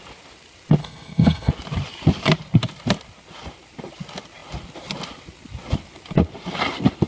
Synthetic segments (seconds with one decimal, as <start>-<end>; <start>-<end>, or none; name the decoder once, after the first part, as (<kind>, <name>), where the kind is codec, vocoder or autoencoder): 0.8-1.5 (codec, SNAC)